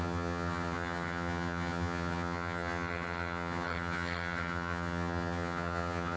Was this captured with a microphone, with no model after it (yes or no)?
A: no